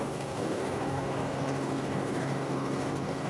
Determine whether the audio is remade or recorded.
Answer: remade